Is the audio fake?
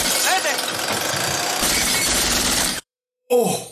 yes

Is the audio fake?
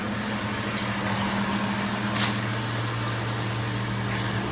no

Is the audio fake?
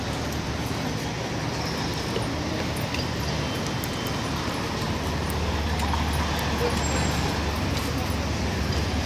no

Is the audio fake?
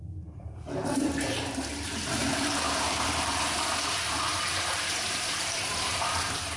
yes